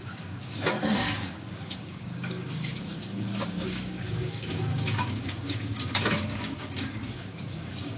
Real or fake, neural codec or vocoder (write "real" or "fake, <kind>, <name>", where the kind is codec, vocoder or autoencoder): fake, codec, DAC